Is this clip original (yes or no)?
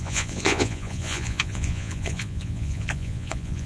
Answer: no